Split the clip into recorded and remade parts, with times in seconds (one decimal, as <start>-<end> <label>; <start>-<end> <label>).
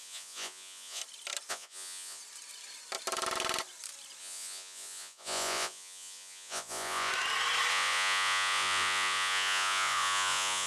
0.0-1.0 remade; 1.0-1.5 recorded; 1.5-2.2 remade; 2.2-4.2 recorded; 4.2-7.1 remade; 7.1-7.7 recorded; 7.7-10.7 remade